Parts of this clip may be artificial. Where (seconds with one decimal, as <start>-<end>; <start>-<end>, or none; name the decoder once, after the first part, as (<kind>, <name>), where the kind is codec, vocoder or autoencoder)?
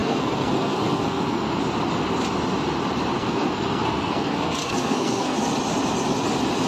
0.0-1.6 (codec, SNAC); 3.2-5.5